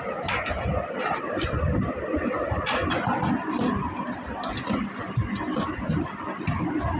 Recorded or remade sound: recorded